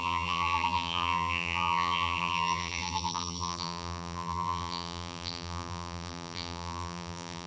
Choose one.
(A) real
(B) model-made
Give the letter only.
B